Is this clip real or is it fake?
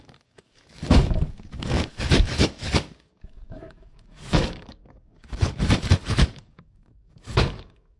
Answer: fake